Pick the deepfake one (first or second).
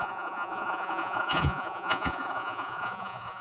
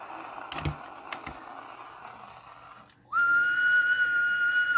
first